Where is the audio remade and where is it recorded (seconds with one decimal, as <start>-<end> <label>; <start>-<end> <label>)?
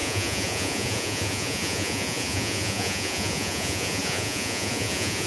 0.0-5.3 remade